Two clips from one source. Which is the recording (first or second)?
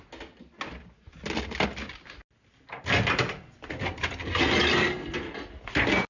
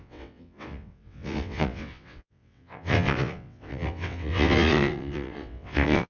first